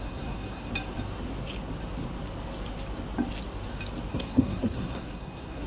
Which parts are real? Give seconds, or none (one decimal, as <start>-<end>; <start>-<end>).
0.7-4.1

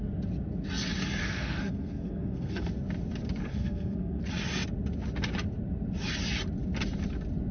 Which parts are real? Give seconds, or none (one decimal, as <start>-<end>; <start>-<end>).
0.0-1.2; 2.7-3.5; 4.2-7.5

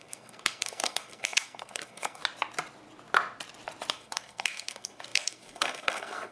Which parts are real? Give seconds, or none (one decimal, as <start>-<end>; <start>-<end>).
2.2-3.9

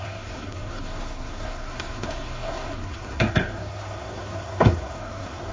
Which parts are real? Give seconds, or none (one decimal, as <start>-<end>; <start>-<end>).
none

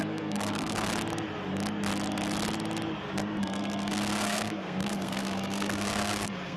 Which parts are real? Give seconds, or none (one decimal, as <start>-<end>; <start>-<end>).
0.9-3.4

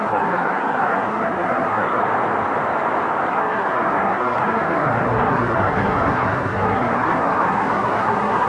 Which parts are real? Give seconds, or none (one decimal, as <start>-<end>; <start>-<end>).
2.0-3.3

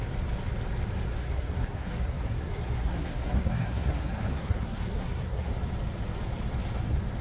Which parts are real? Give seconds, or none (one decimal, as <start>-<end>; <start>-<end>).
0.0-1.2; 5.5-7.2

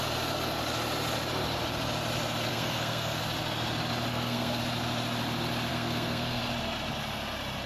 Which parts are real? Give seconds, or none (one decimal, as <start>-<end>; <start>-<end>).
0.0-2.5; 3.2-4.1; 4.6-5.7; 6.4-7.7